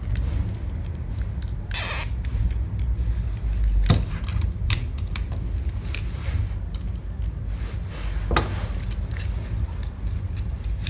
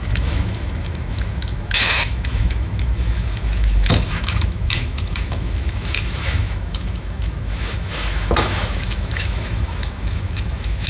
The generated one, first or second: second